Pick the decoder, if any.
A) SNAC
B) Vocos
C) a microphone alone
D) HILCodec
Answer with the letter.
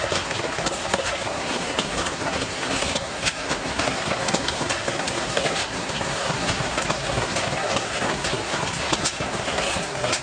A